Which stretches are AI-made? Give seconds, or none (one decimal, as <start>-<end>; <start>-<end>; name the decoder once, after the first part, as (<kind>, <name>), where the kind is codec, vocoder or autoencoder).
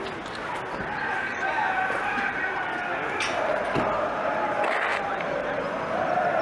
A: 1.3-2.6 (vocoder, BigVGAN v2); 4.9-5.8